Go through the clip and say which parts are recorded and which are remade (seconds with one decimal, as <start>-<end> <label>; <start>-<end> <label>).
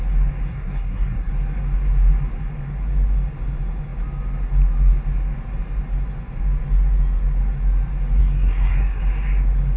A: 0.0-0.5 recorded; 0.5-1.3 remade; 1.3-8.2 recorded; 8.2-9.0 remade; 9.0-9.8 recorded